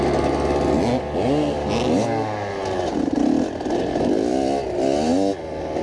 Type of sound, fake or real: real